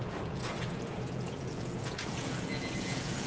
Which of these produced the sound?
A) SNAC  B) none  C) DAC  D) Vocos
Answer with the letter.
D